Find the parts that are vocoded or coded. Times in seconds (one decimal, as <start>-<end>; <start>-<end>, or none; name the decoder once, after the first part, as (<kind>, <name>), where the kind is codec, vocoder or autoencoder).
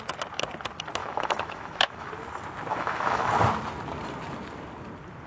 1.0-2.1 (autoencoder, DAC-VAE); 2.7-3.3